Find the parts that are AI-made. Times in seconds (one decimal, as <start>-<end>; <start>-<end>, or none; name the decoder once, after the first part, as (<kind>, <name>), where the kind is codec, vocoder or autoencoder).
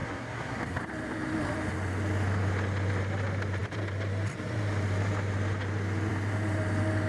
0.0-0.8 (codec, SNAC)